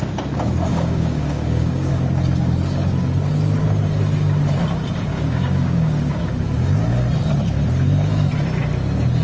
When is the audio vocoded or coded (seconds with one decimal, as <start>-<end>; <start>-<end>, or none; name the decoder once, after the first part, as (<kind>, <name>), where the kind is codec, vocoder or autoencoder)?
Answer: 0.7-1.9 (codec, DAC); 5.1-6.3